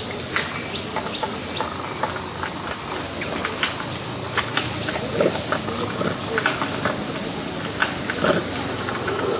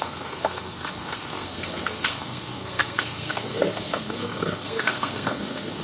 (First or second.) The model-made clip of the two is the second